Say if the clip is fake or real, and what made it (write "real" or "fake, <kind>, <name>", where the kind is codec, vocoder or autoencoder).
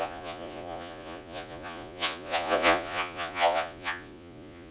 fake, vocoder, Vocos